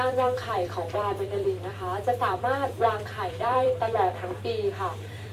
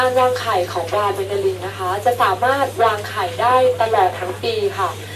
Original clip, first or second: second